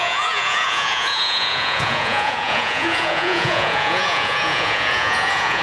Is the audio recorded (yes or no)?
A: no